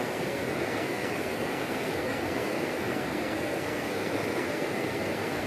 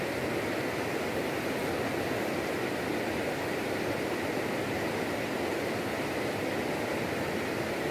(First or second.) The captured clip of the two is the second